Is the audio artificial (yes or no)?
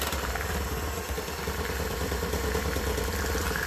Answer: yes